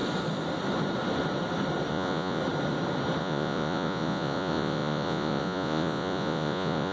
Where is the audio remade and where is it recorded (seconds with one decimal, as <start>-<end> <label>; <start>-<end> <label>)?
0.0-1.9 recorded; 1.9-2.4 remade; 2.4-3.2 recorded; 3.2-6.9 remade